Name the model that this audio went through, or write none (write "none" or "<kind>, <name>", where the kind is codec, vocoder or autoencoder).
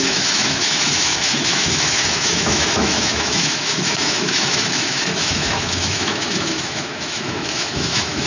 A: autoencoder, DAC-VAE